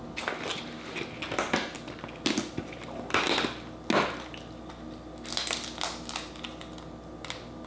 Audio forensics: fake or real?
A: real